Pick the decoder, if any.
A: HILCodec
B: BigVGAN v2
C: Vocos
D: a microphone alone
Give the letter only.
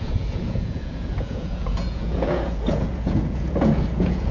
C